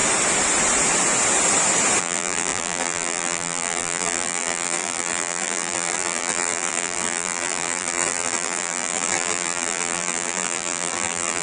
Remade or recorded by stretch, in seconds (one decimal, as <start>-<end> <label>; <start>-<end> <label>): 0.0-2.0 recorded; 2.0-11.4 remade